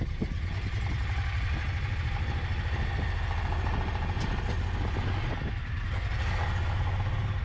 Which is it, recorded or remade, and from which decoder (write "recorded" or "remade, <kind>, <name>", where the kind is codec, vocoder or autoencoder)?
recorded